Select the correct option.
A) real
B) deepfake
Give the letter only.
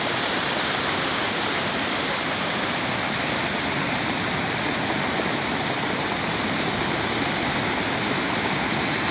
A